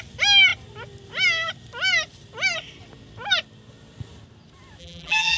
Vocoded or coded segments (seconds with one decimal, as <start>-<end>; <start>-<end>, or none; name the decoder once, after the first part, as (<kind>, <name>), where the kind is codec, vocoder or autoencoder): 4.8-5.4 (vocoder, BigVGAN v2)